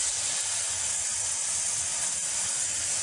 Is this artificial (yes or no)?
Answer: no